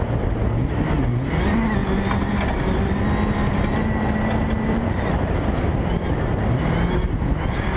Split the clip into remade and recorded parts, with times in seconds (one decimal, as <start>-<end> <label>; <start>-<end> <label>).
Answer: 0.0-7.8 recorded